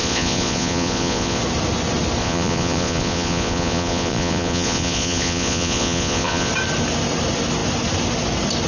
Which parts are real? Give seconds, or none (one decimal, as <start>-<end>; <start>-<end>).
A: 1.4-2.2; 6.5-8.7